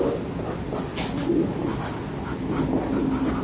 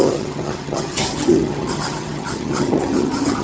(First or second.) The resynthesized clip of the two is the second